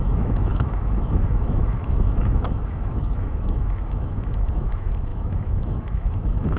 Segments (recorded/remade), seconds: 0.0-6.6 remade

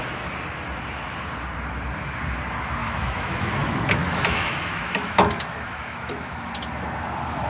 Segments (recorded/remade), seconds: 0.0-2.8 recorded; 2.8-6.5 remade; 6.5-7.5 recorded